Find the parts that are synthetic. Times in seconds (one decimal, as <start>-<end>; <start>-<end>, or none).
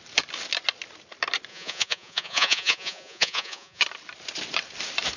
1.5-3.8